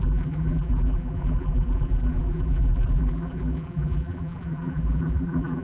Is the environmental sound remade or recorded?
remade